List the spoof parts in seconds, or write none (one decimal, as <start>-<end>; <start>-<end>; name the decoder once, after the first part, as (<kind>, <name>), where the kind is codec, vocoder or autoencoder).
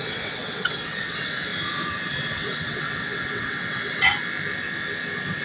0.0-1.5 (vocoder, WaveNeXt); 2.1-4.1